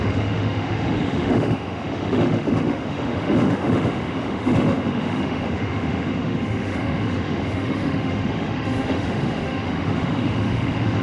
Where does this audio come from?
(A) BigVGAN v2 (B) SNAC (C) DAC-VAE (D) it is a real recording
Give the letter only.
C